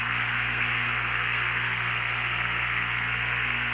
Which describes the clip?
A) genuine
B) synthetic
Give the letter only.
B